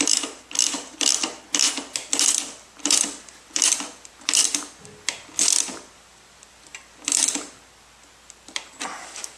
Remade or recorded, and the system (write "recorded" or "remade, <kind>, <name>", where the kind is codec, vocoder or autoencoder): recorded